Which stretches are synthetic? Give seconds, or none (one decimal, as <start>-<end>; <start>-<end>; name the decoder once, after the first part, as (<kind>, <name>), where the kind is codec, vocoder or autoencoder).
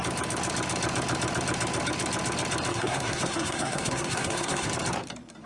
2.7-4.7 (codec, SNAC)